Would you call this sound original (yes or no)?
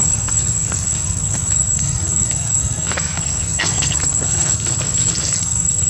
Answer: no